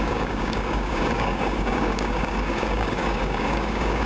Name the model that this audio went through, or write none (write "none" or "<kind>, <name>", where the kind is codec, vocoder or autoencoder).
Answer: codec, DAC